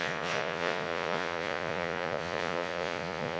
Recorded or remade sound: remade